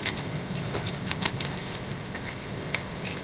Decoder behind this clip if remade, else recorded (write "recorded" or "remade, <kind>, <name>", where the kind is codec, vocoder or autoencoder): remade, codec, ZipCodec